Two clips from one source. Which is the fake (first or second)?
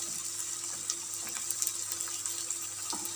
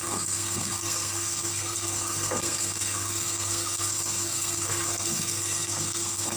second